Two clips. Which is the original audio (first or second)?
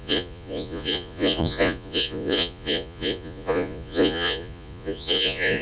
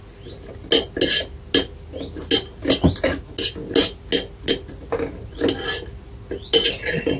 second